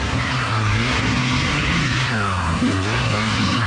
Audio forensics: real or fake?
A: fake